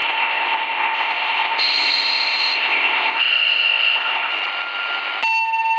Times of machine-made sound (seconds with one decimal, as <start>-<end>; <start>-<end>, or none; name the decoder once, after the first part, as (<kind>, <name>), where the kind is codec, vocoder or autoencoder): 0.0-4.3 (codec, ZipCodec)